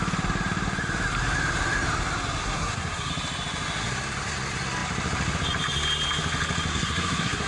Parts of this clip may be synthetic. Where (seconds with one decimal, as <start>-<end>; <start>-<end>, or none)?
2.4-3.1; 6.7-7.5